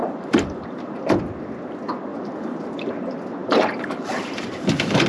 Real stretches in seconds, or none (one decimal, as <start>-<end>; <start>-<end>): 1.2-2.1; 2.9-3.4